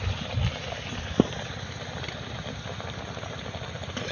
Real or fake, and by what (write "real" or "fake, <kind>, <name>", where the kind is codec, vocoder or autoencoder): real